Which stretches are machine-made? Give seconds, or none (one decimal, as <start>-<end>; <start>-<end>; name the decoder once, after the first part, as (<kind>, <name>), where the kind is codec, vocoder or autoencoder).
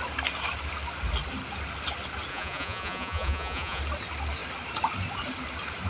2.3-3.8 (vocoder, Vocos)